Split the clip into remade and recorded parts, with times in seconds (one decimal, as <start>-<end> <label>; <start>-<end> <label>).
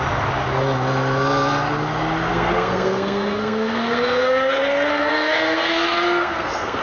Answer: 0.0-2.3 recorded; 2.3-6.8 remade